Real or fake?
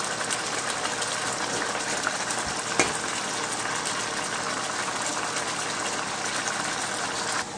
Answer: real